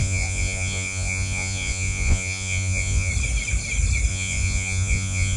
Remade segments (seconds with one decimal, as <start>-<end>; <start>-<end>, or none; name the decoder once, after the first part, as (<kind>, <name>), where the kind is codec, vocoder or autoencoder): 0.0-3.1 (vocoder, Vocos); 4.1-5.4